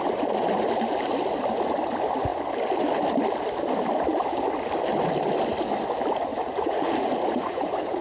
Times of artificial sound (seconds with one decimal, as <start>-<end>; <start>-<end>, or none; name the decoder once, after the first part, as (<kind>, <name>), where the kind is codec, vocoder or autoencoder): 6.3-8.0 (vocoder, Vocos)